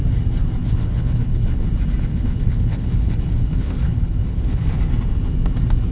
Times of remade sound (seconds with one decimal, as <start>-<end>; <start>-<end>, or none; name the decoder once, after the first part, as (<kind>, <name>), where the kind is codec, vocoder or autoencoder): 0.6-1.7 (codec, HILCodec); 2.1-4.8